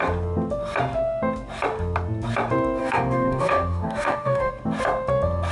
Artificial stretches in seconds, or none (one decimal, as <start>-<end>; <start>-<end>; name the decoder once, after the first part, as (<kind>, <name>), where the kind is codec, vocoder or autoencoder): 2.8-4.5 (codec, DAC)